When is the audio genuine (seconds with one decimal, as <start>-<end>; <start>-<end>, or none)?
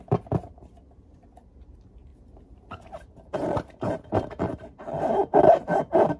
0.0-2.1; 5.8-6.2